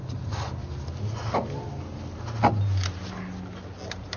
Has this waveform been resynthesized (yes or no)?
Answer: no